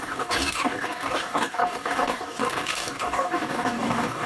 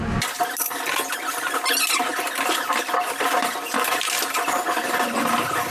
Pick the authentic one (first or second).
second